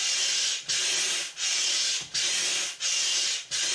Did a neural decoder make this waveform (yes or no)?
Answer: no